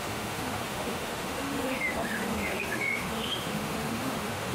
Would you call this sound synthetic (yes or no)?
yes